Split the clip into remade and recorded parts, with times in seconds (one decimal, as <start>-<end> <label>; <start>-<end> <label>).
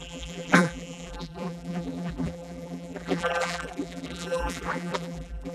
0.0-5.5 remade